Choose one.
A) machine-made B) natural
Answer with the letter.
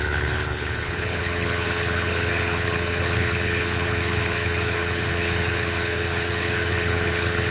A